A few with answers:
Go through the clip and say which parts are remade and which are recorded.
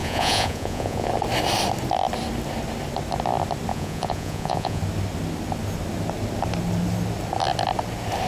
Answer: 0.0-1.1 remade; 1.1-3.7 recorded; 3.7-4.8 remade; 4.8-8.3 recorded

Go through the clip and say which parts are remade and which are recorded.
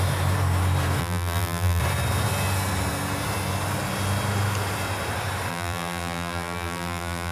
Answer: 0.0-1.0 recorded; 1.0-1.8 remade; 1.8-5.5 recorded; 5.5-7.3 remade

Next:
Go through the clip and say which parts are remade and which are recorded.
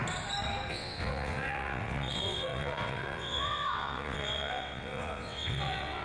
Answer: 0.0-0.7 recorded; 0.7-6.0 remade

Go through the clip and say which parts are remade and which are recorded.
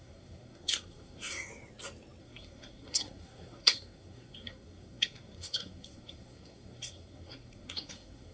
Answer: 0.0-1.5 remade; 1.5-2.2 recorded; 2.2-8.3 remade